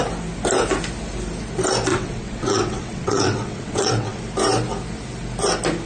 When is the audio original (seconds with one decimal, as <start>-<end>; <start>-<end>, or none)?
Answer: 0.0-1.9; 4.2-5.9